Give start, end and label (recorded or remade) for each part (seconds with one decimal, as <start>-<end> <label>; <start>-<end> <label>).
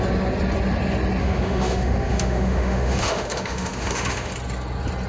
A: 0.0-1.2 recorded; 1.2-4.3 remade; 4.3-5.1 recorded